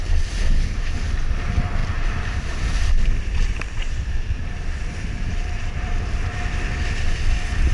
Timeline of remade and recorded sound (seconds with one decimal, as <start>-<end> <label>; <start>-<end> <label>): 0.0-1.8 recorded; 1.8-6.0 remade; 6.0-7.7 recorded